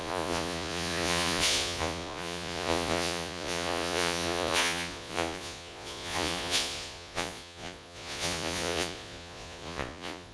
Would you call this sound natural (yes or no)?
no